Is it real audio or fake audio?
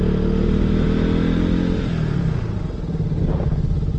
real